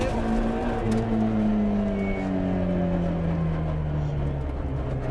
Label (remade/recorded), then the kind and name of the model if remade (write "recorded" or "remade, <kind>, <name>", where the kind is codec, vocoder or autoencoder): recorded